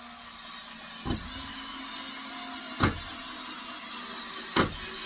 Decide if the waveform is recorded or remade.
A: recorded